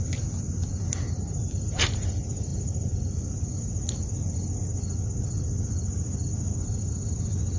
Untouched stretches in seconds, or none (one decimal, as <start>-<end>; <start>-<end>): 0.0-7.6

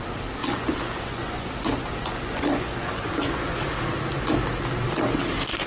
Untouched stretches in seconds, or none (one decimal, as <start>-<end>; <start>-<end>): 0.0-0.4; 3.6-5.7

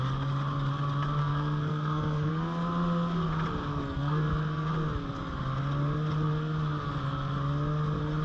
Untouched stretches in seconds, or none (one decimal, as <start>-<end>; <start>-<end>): 0.0-1.2; 2.3-3.7; 4.2-8.2